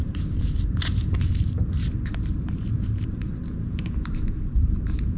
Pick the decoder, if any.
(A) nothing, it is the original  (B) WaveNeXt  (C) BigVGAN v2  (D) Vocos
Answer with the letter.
C